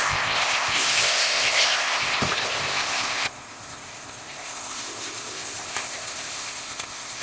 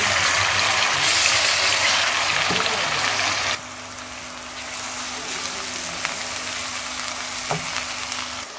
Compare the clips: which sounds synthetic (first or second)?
first